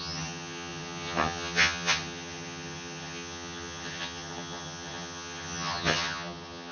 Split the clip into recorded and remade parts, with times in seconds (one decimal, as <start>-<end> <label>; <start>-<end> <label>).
0.0-6.7 remade